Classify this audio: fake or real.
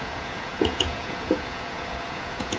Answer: fake